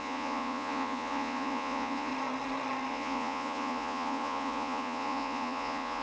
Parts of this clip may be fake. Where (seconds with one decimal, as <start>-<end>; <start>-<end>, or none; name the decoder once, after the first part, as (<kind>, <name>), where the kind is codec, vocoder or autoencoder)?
0.0-2.1 (vocoder, Vocos); 2.9-6.0